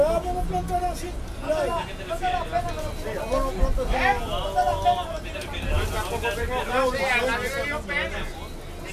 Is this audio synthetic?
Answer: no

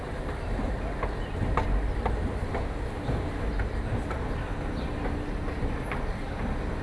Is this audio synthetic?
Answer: no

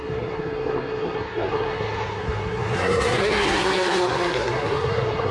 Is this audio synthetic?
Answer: yes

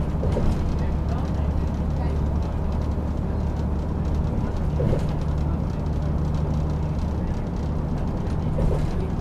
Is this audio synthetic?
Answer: no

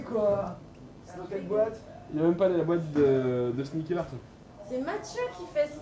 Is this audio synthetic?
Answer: no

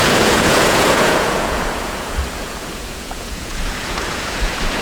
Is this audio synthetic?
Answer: yes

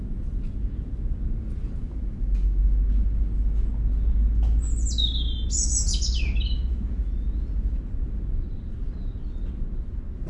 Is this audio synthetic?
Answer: no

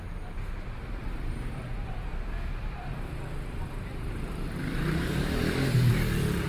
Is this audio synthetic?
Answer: yes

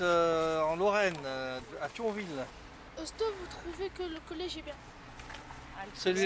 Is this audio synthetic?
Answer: no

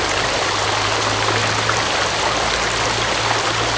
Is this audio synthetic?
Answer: no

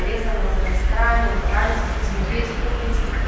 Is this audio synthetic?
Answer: no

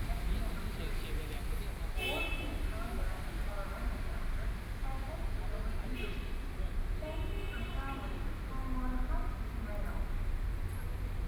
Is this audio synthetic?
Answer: no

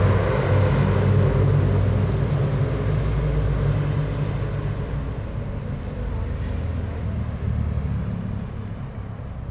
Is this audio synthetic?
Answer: no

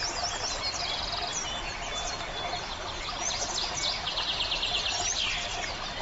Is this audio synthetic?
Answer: no